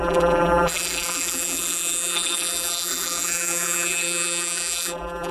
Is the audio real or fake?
fake